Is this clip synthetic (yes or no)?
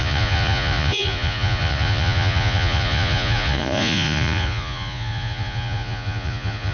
yes